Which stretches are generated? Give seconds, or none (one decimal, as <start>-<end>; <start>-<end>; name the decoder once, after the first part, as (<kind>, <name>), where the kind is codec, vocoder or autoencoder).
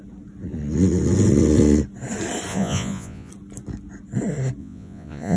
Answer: 2.5-3.3 (vocoder, Vocos); 4.6-5.4